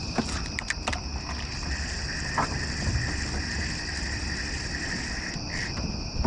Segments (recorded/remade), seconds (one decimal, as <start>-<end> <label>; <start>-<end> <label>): 0.0-1.1 remade; 1.1-4.9 recorded; 4.9-6.3 remade